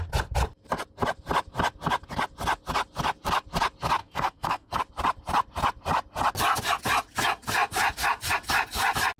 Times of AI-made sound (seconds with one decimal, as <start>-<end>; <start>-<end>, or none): 4.0-4.8